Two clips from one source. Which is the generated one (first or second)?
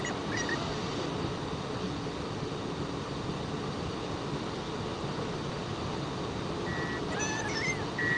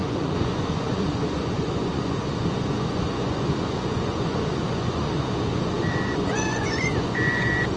second